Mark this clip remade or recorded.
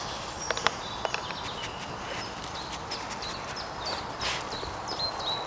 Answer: recorded